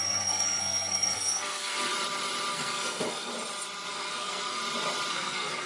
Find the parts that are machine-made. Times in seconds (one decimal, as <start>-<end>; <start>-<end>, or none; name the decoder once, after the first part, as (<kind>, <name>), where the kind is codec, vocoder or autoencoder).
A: 0.0-1.9 (codec, SNAC); 2.5-3.3; 3.9-4.6; 5.1-5.7